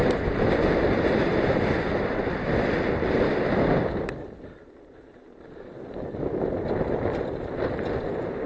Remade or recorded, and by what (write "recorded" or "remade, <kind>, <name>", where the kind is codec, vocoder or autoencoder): recorded